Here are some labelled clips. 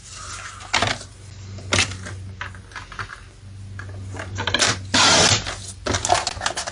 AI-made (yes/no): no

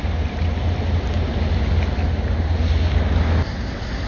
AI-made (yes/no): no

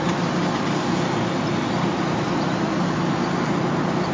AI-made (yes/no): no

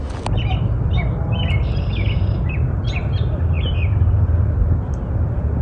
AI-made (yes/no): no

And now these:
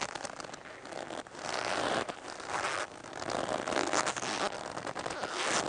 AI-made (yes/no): no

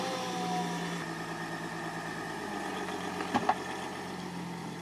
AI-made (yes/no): no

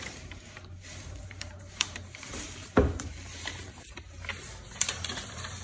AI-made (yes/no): yes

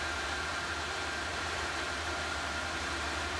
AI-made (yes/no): yes